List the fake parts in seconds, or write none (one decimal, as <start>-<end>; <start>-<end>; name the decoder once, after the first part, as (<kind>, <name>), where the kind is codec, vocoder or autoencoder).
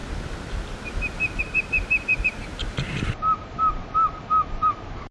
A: 1.4-5.1 (vocoder, BigVGAN v2)